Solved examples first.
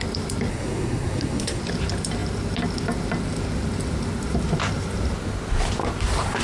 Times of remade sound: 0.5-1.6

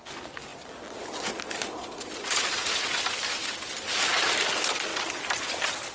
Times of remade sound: none

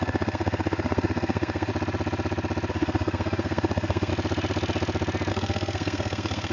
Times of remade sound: 0.0-1.7; 2.7-4.1; 5.3-6.5

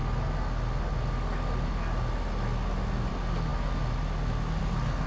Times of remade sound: none

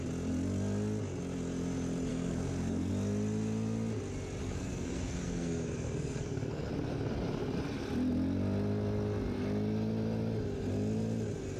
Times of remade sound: 2.1-2.9; 4.4-6.7

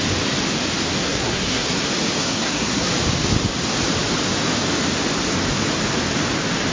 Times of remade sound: 1.0-1.8; 2.2-2.9

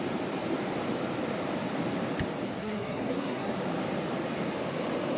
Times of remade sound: 2.6-3.5